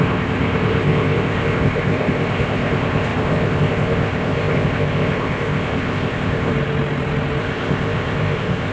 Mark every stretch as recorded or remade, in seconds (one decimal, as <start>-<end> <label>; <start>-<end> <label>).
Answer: 0.0-6.5 remade; 6.5-7.4 recorded; 7.4-8.7 remade